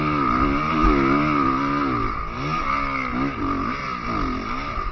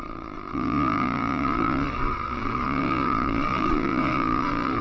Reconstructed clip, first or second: second